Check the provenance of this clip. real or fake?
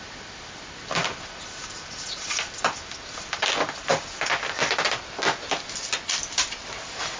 real